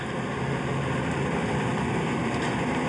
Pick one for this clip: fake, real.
real